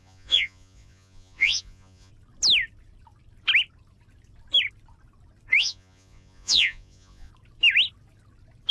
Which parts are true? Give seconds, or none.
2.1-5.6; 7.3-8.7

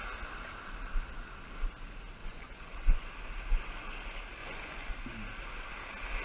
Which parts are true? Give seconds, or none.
0.0-2.2; 3.1-4.4; 4.9-6.2

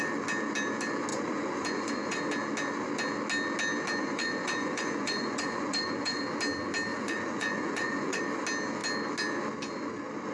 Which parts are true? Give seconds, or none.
0.0-1.1; 2.2-4.0; 6.2-6.9; 8.2-10.3

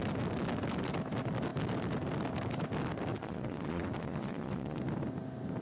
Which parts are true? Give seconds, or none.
0.0-3.1; 4.8-5.6